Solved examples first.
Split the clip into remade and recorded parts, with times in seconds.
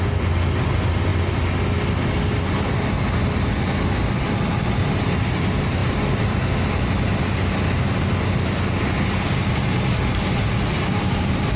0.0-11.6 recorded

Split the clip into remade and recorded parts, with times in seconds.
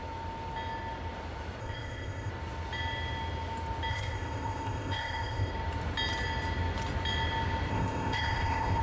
0.0-1.6 recorded; 1.6-2.3 remade; 2.3-3.9 recorded; 3.9-5.5 remade; 5.5-7.7 recorded; 7.7-8.8 remade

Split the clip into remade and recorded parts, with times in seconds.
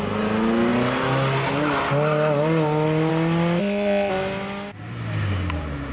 0.0-3.6 recorded; 3.6-4.1 remade; 4.1-5.9 recorded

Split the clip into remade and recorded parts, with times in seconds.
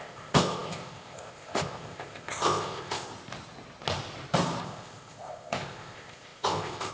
0.0-3.1 remade; 3.1-4.6 recorded; 4.6-6.9 remade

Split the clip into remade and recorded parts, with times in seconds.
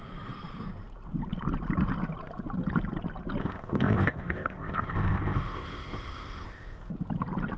0.0-3.4 recorded; 3.4-6.9 remade; 6.9-7.6 recorded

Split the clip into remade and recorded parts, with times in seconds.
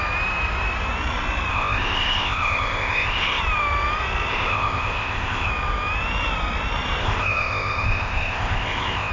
0.0-1.5 recorded; 1.5-3.4 remade; 3.4-4.3 recorded; 4.3-5.5 remade; 5.5-7.0 recorded; 7.0-9.1 remade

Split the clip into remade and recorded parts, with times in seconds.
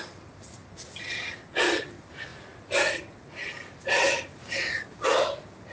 0.0-5.7 recorded